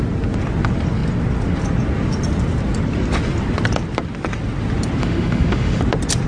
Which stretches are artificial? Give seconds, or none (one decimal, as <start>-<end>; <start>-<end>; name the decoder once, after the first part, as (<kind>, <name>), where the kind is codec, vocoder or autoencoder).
5.0-5.8 (autoencoder, DAC-VAE)